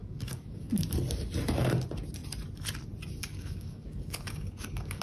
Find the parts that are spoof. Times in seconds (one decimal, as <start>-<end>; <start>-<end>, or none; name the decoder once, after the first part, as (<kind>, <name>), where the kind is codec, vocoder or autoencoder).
0.0-0.7 (codec, DAC); 3.2-5.0